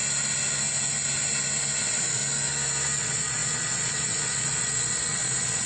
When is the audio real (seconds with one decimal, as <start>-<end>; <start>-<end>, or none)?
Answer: 0.0-1.8; 2.2-3.0